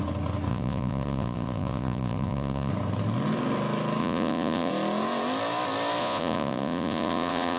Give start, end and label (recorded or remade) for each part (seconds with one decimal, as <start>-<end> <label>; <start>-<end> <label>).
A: 0.0-0.5 recorded; 0.5-2.7 remade; 2.7-4.0 recorded; 4.0-4.7 remade; 4.7-6.0 recorded; 6.0-7.6 remade